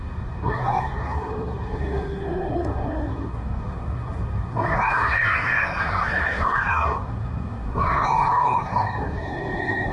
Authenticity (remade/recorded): remade